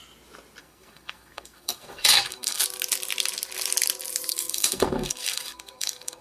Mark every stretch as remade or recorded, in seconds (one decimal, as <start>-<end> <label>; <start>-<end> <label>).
0.0-0.6 recorded; 0.6-2.6 remade; 2.6-4.3 recorded; 4.3-6.2 remade

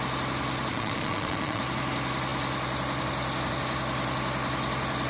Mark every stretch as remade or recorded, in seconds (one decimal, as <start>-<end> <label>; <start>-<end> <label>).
0.0-0.7 recorded; 0.7-1.6 remade; 1.6-5.1 recorded

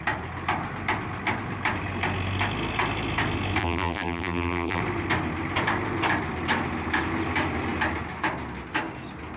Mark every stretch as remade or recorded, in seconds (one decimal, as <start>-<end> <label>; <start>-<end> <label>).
0.0-3.6 recorded; 3.6-4.8 remade; 4.8-9.4 recorded